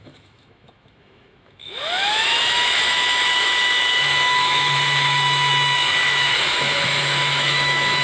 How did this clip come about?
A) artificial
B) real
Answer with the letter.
A